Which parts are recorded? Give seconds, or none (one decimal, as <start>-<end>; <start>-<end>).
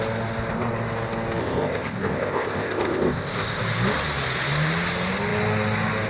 0.0-1.4; 3.6-6.1